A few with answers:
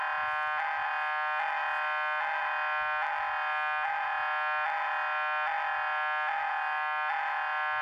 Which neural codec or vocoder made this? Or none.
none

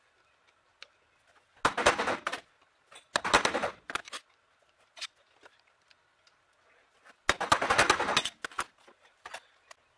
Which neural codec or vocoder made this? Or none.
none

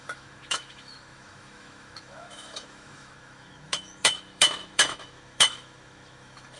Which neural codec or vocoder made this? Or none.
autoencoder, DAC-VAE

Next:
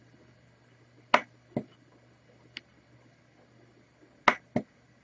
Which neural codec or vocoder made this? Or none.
none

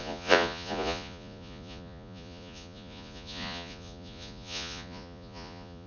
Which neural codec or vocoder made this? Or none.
vocoder, Vocos